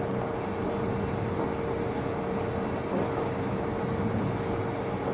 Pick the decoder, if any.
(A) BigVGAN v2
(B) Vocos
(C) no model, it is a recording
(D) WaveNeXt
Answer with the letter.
C